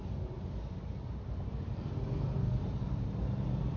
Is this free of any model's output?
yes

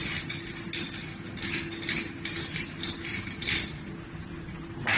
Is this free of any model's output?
yes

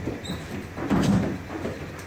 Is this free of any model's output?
no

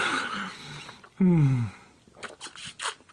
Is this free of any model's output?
yes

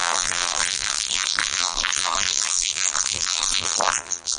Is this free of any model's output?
no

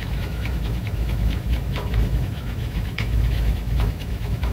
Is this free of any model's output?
no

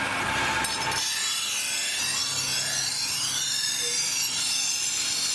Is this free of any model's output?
yes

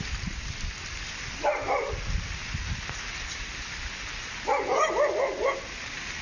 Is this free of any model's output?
yes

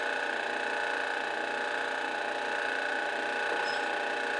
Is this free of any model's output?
yes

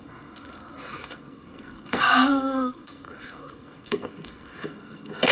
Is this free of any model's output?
no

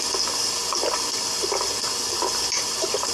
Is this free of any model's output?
no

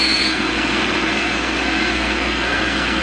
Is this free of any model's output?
no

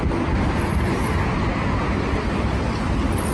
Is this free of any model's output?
yes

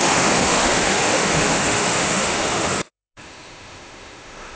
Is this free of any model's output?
no